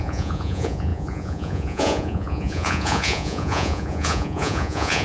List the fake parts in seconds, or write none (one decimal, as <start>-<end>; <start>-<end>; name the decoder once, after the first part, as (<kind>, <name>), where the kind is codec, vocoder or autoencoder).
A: 0.0-5.0 (vocoder, Vocos)